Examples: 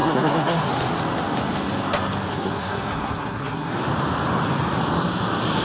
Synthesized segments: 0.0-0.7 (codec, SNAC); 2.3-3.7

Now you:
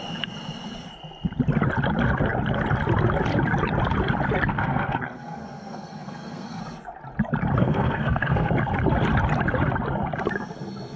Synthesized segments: 4.5-6.6 (codec, SNAC); 7.6-8.5